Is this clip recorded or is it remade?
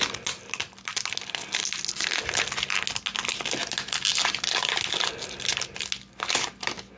recorded